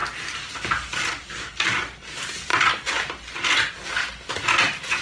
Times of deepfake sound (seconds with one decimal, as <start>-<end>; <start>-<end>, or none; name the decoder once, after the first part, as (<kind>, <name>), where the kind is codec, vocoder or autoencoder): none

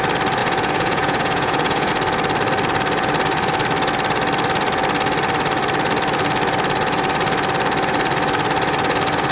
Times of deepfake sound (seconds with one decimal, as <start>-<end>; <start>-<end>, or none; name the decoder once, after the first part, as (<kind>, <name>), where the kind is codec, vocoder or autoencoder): 0.4-1.9 (vocoder, Vocos)

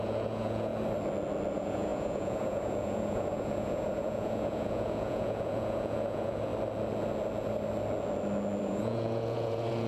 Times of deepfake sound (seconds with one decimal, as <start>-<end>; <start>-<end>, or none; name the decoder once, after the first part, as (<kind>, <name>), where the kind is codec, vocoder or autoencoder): 0.0-0.7 (vocoder, Vocos); 1.5-6.5; 8.6-9.9

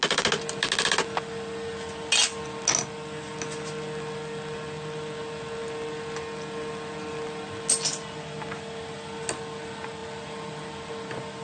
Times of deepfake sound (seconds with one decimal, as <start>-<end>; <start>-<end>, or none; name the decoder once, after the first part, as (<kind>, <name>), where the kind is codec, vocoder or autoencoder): none